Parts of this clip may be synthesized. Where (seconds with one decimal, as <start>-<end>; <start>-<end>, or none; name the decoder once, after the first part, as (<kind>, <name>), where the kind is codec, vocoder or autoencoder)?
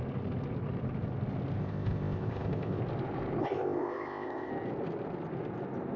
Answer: 1.6-2.8 (codec, ZipCodec); 3.4-4.5